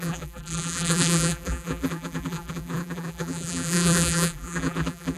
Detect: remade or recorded remade